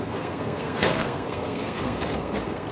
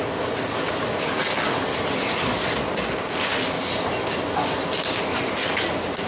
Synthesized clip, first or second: first